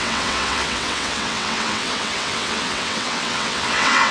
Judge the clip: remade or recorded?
remade